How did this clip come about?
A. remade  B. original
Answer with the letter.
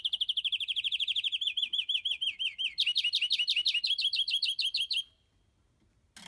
B